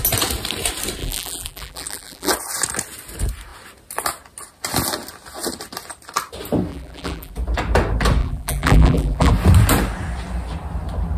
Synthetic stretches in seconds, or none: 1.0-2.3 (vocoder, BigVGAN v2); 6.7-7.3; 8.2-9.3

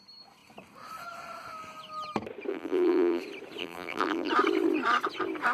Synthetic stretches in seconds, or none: 2.5-3.2 (vocoder, BigVGAN v2); 3.6-4.3

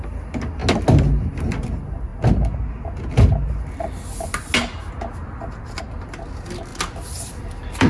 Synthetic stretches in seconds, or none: none

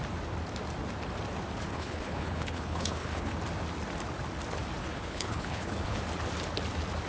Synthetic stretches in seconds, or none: 1.7-3.3 (codec, HILCodec); 4.8-6.0